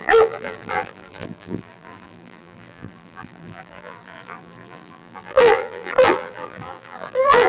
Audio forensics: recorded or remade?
remade